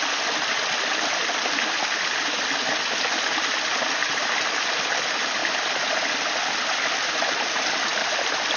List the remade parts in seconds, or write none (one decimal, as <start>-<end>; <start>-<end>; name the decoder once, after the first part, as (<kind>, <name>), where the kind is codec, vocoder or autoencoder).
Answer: none